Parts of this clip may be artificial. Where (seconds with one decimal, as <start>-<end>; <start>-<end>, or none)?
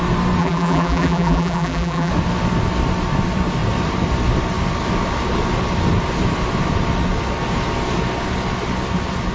0.4-2.1